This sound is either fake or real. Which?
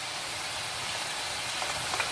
real